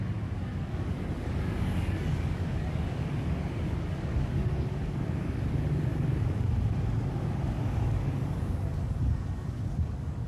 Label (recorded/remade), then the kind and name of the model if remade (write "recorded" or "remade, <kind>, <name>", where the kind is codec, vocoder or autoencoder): remade, codec, DAC